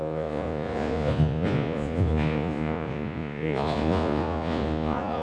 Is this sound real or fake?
fake